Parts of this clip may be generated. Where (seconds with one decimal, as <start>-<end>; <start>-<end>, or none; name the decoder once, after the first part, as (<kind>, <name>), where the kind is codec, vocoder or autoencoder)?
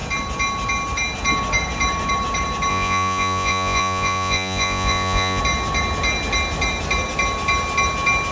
2.7-5.4 (vocoder, Vocos)